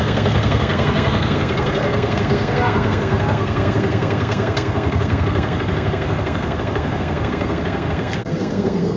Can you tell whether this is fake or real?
fake